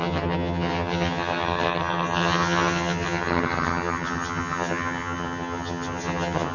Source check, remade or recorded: remade